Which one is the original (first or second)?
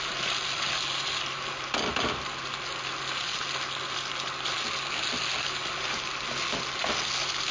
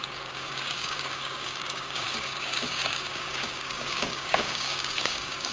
first